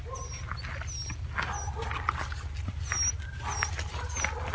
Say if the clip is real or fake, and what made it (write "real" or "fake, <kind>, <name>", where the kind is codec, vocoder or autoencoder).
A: real